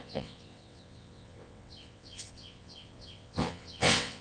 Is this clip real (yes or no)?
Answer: no